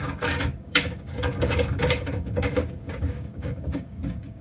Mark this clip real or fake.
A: fake